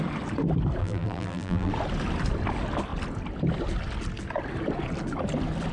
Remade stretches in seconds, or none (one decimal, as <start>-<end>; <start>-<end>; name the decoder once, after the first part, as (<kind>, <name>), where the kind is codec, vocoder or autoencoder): 0.8-1.7 (vocoder, BigVGAN v2)